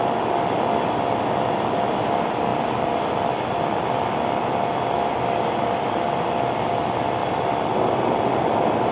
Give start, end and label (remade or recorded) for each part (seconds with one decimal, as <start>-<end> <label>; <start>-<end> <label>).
0.0-8.9 recorded